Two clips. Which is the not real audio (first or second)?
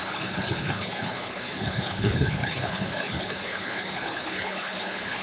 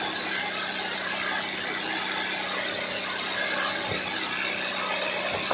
first